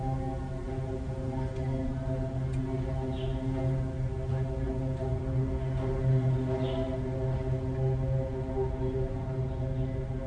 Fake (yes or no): no